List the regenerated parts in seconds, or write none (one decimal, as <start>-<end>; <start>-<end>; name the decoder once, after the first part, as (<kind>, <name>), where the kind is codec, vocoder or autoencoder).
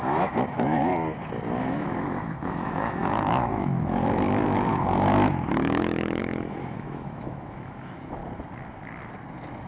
0.0-0.9 (autoencoder, DAC-VAE); 1.6-8.2